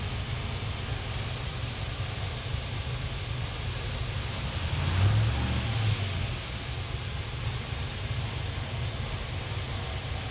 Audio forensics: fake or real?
real